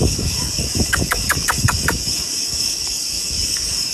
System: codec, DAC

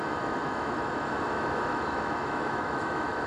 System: autoencoder, DAC-VAE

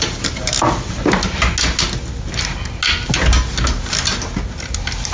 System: none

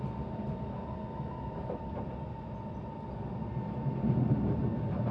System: none